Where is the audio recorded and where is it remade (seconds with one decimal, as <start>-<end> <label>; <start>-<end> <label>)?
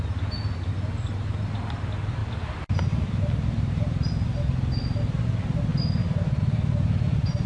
0.0-2.2 recorded; 2.2-4.1 remade; 4.1-7.5 recorded